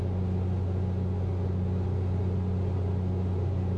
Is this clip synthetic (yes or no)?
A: no